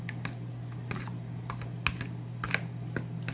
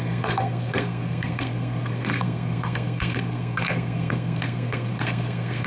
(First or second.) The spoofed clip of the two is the second